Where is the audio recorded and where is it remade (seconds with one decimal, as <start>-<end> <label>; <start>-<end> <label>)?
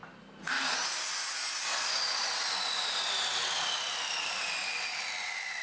0.0-5.6 recorded